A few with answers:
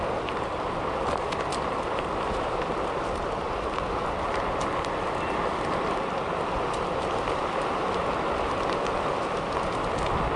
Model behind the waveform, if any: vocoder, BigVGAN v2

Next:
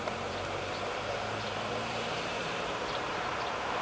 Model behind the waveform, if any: vocoder, BigVGAN v2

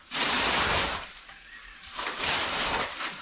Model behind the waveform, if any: vocoder, BigVGAN v2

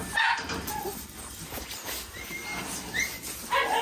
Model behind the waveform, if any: none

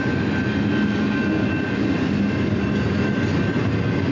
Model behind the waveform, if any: none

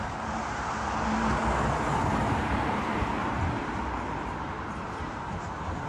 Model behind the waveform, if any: vocoder, BigVGAN v2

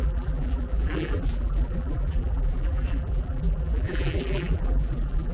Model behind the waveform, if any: vocoder, BigVGAN v2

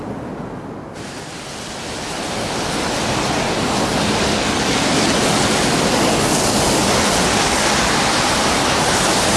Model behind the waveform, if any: none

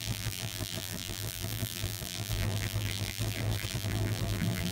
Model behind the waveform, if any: vocoder, BigVGAN v2